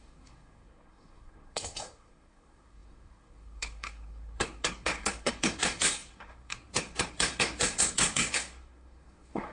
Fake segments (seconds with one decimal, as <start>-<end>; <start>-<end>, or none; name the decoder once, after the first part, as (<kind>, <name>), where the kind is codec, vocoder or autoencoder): 0.0-9.5 (codec, SNAC)